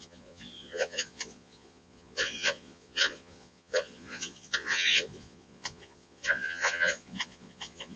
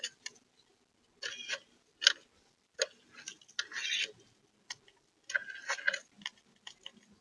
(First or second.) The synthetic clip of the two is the first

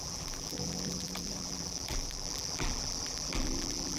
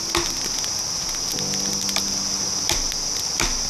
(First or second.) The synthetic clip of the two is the first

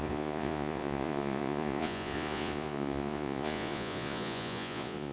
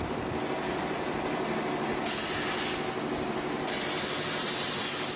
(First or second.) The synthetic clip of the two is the first